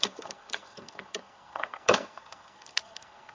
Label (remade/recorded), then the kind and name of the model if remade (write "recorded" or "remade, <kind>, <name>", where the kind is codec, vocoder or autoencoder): remade, codec, SNAC